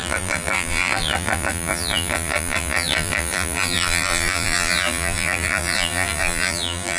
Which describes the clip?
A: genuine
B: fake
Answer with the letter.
B